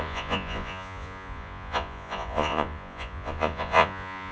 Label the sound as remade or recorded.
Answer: remade